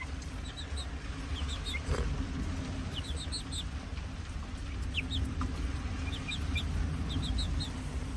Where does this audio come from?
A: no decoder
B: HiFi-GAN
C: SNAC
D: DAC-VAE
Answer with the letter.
A